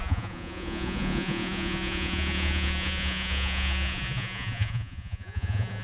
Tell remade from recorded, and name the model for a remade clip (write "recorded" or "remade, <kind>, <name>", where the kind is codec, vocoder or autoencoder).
remade, vocoder, Vocos